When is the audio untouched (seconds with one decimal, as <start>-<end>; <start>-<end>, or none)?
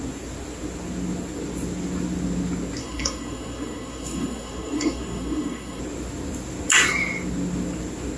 0.0-2.8; 5.8-8.2